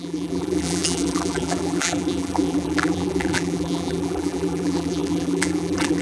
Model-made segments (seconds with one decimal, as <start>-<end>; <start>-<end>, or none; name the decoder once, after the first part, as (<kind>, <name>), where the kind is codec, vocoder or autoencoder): 0.0-6.0 (vocoder, BigVGAN v2)